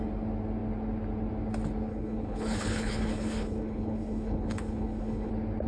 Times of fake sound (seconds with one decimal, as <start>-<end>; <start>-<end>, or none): 1.9-5.3